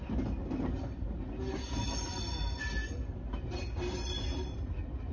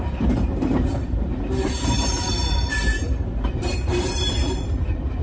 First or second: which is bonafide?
first